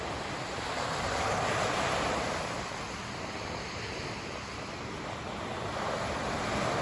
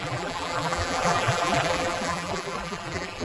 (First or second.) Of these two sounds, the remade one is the second